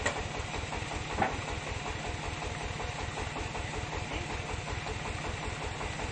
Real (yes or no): yes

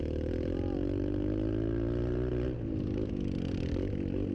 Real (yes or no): yes